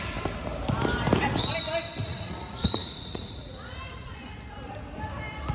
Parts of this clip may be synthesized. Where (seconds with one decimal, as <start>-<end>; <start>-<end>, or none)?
2.0-4.3